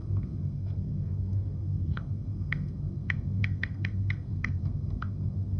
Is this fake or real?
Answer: fake